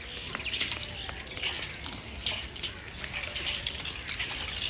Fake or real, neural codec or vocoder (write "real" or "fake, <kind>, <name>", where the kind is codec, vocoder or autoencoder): real